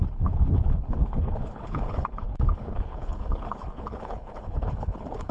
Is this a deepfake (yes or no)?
yes